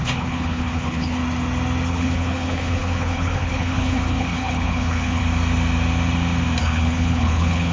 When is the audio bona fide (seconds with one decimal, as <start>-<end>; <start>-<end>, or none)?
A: 1.2-1.9; 5.2-6.6